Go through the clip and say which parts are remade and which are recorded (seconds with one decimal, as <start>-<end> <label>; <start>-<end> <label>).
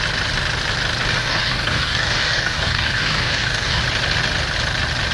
0.0-1.2 recorded; 1.2-3.8 remade; 3.8-5.1 recorded